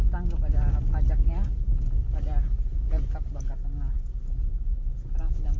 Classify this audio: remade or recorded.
recorded